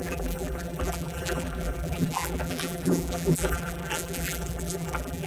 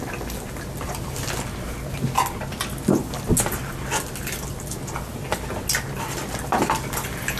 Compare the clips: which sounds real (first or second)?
second